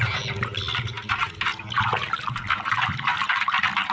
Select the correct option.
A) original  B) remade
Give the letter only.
A